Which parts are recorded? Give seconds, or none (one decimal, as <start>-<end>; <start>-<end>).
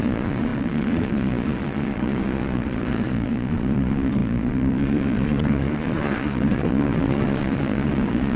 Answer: none